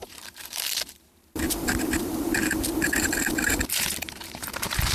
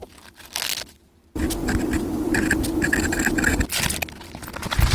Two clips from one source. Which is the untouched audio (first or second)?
second